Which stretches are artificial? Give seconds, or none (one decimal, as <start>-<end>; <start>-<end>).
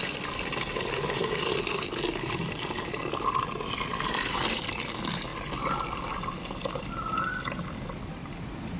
none